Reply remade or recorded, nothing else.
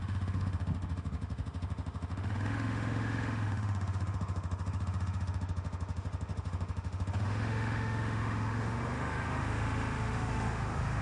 remade